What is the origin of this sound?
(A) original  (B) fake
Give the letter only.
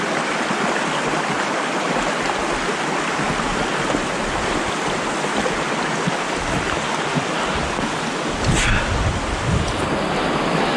A